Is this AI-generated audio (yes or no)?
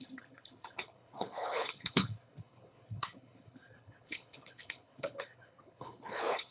yes